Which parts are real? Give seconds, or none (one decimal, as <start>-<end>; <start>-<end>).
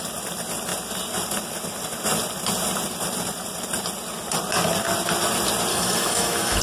0.0-5.7